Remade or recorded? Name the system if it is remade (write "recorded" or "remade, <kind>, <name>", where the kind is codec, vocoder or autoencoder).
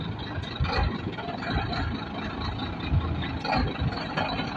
recorded